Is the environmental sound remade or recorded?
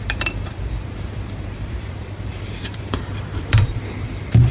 remade